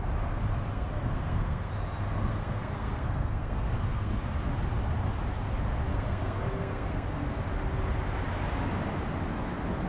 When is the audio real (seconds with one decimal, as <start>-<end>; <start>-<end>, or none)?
0.0-0.7; 1.7-2.3; 4.2-5.9; 7.3-9.9